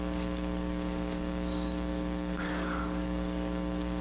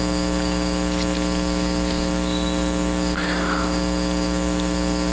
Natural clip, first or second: second